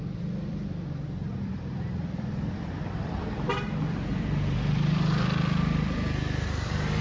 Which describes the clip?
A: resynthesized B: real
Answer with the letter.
A